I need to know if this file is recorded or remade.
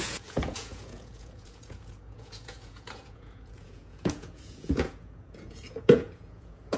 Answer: remade